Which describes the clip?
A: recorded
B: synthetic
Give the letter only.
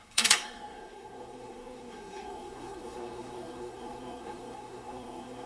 B